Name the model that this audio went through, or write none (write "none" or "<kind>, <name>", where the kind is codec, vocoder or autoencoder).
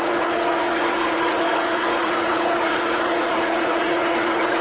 vocoder, Vocos